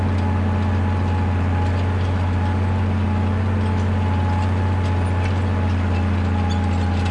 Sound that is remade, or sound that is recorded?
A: recorded